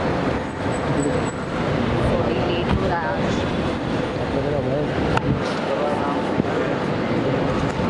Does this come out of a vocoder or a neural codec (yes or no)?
no